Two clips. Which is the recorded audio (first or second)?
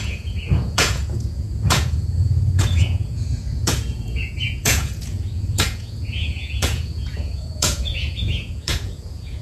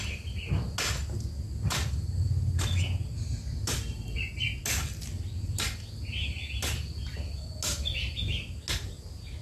second